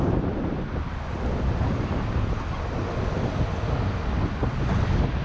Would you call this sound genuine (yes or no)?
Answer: yes